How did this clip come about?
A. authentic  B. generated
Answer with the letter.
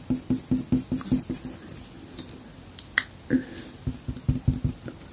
A